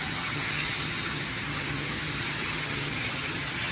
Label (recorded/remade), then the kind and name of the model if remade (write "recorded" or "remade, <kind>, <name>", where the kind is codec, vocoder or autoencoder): remade, vocoder, HiFi-GAN